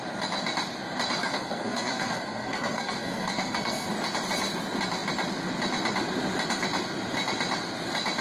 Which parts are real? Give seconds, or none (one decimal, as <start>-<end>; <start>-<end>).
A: 0.0-1.2; 3.9-8.2

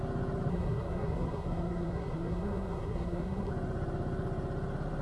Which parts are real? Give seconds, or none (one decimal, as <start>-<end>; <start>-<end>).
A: 0.0-0.5; 3.5-5.0